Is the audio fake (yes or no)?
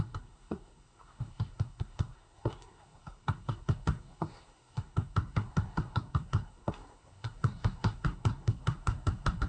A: yes